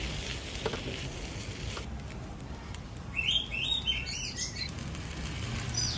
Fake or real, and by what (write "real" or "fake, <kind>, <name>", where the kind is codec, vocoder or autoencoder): fake, vocoder, BigVGAN v2